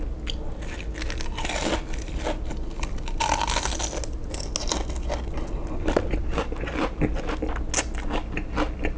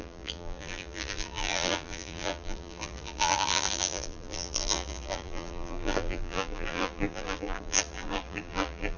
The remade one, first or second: second